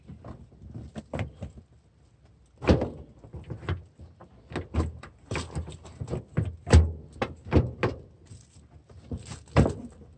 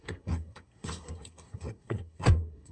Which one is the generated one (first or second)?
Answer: second